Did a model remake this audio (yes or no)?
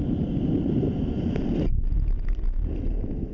no